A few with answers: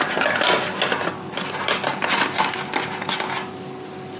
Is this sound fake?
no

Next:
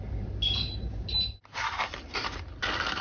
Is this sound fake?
no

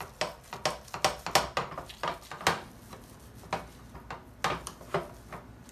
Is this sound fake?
no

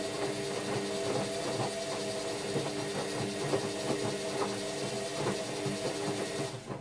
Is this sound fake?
no